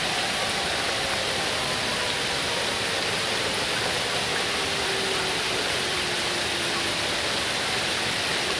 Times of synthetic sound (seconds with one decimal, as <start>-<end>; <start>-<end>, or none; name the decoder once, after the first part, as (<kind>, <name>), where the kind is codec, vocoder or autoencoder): none